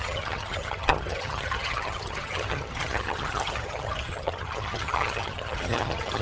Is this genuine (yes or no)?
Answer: no